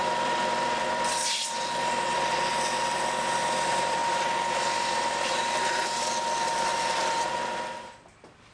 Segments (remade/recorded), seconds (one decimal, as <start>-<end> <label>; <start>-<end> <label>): 0.0-6.7 remade; 6.7-7.3 recorded; 7.3-8.5 remade